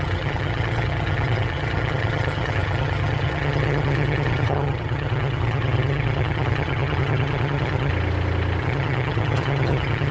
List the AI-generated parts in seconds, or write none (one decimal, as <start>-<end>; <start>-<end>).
0.0-7.9; 8.6-10.1